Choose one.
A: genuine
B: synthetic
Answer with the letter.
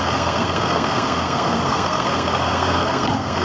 B